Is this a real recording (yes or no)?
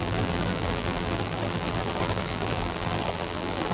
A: no